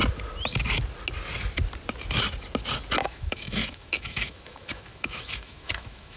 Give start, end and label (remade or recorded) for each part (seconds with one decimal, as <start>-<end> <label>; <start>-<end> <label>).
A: 0.0-3.0 recorded; 3.0-6.2 remade